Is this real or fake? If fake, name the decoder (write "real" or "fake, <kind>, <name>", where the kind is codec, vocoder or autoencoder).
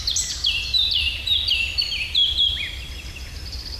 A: real